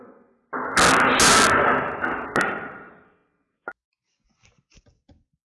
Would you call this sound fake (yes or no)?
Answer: no